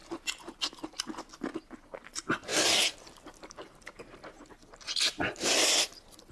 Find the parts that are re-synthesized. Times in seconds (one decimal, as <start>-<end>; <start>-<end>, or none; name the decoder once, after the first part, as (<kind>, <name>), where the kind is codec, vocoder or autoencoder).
2.5-4.2 (vocoder, BigVGAN v2)